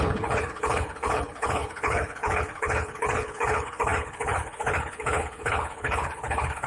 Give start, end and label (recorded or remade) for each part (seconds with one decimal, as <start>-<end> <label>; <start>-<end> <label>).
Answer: 0.0-6.7 remade